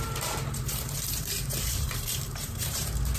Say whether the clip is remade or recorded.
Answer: remade